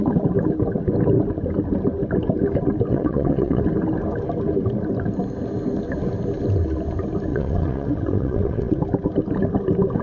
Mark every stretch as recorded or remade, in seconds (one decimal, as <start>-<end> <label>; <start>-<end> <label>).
0.0-2.9 recorded; 2.9-3.6 remade; 3.6-7.3 recorded; 7.3-8.8 remade; 8.8-10.0 recorded

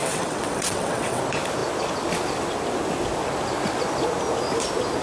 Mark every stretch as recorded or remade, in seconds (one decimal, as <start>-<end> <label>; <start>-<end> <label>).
0.0-1.2 remade; 1.2-5.0 recorded

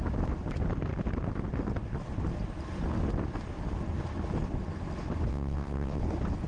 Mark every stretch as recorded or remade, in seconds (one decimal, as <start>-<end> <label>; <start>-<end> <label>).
0.0-5.3 recorded; 5.3-6.0 remade; 6.0-6.5 recorded